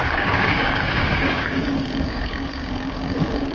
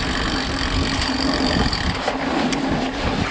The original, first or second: second